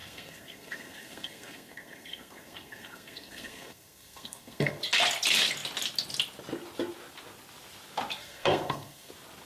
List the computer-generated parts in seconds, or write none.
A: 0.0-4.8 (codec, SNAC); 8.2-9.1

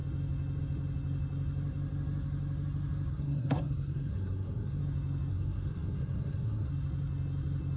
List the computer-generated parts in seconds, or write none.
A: 3.1-4.8 (codec, SNAC); 5.3-6.7

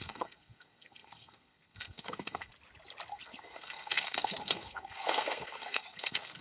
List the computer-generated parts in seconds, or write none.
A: 0.0-2.5 (codec, SNAC); 3.1-6.4

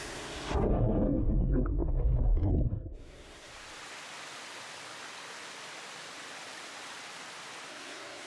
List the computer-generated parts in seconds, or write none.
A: 0.0-3.5 (codec, SNAC); 7.7-8.3

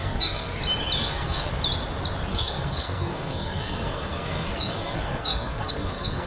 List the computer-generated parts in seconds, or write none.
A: 0.0-0.6 (codec, SNAC); 1.0-1.5; 2.3-6.3

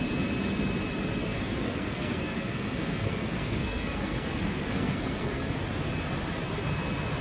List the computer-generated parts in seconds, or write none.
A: 1.2-5.5 (codec, SNAC)

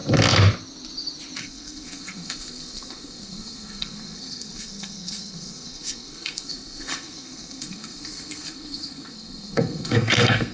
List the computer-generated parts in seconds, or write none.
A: 1.4-10.5 (codec, SNAC)